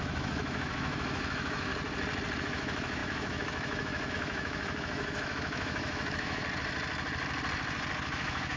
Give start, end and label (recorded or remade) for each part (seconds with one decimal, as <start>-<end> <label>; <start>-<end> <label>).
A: 0.0-1.7 remade; 1.7-2.4 recorded; 2.4-6.4 remade; 6.4-8.1 recorded; 8.1-8.6 remade